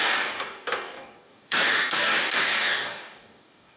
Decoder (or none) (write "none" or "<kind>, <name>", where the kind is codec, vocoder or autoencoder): codec, DAC